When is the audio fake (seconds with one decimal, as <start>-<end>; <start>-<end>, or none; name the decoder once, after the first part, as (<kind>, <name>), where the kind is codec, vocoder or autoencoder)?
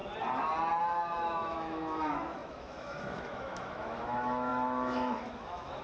0.8-5.8 (autoencoder, DAC-VAE)